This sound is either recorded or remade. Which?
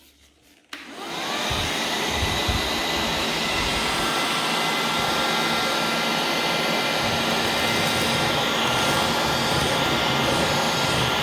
recorded